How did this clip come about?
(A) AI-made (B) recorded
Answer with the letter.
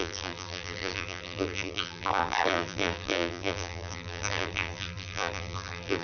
A